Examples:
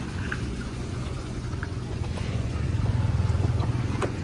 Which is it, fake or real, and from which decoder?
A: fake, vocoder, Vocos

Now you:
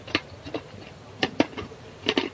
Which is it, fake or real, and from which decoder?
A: real